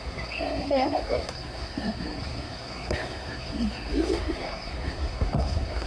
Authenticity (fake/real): fake